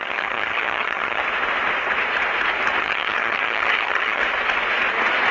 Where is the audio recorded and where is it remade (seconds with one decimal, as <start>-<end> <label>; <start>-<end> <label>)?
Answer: 0.0-1.2 remade; 1.2-2.8 recorded; 2.8-4.2 remade; 4.2-5.3 recorded